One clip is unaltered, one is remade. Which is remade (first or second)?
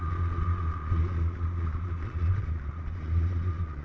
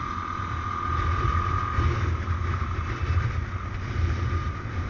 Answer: first